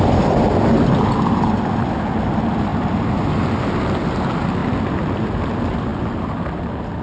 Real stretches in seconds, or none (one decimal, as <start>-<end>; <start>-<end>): 0.0-7.0

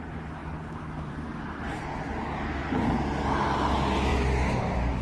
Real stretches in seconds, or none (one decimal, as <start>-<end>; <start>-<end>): 0.0-5.0

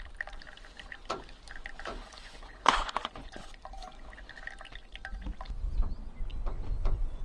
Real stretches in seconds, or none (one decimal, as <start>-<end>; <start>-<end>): 0.0-1.9; 3.5-6.3